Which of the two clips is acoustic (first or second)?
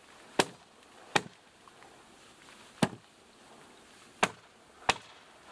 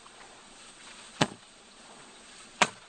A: first